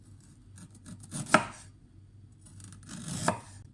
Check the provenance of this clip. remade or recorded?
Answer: recorded